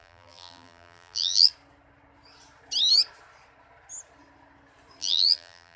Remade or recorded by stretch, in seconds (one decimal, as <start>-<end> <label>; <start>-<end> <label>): 0.0-1.5 remade; 1.5-5.0 recorded; 5.0-5.8 remade